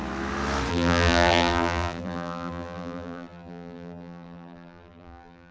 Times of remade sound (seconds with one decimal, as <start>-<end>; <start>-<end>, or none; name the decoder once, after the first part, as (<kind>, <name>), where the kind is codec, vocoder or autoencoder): 0.7-5.5 (vocoder, BigVGAN v2)